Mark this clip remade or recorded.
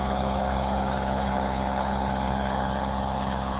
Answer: remade